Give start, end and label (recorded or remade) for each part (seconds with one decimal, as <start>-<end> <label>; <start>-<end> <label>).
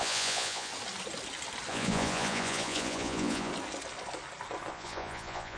0.0-0.7 remade; 0.7-1.7 recorded; 1.7-3.5 remade; 3.5-4.7 recorded; 4.7-5.6 remade